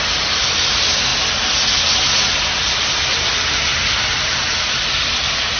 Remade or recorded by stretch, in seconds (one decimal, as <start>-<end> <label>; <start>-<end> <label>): 0.0-5.6 recorded

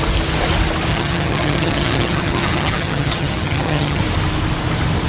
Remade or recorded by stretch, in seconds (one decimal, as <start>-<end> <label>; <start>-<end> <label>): 0.0-0.9 recorded; 0.9-4.0 remade; 4.0-5.1 recorded

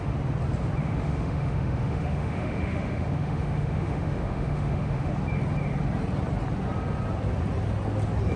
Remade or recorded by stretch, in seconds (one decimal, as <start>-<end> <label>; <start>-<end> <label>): 0.0-0.8 recorded; 0.8-5.1 remade; 5.1-8.4 recorded

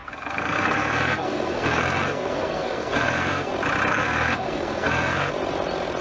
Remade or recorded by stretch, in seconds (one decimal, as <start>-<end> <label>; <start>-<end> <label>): 0.0-3.5 remade; 3.5-3.9 recorded; 3.9-5.3 remade; 5.3-6.0 recorded

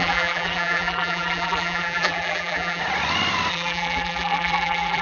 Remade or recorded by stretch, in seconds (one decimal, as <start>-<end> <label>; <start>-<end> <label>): 0.0-2.8 remade; 2.8-3.5 recorded; 3.5-5.0 remade

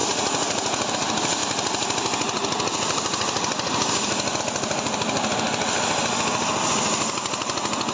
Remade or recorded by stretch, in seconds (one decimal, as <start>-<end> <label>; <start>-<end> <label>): 0.0-0.9 remade; 0.9-7.9 recorded

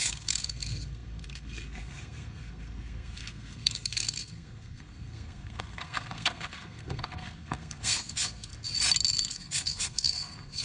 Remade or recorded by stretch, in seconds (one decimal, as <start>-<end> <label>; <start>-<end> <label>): 0.0-8.5 remade; 8.5-9.3 recorded; 9.3-10.6 remade